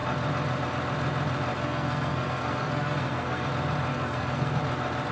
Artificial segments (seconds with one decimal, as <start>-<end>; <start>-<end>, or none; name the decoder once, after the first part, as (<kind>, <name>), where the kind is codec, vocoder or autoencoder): 1.5-3.5 (codec, SNAC); 3.9-4.6